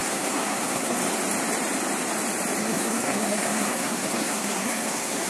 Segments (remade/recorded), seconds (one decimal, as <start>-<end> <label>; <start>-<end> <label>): 0.0-1.0 remade; 1.0-2.6 recorded; 2.6-5.3 remade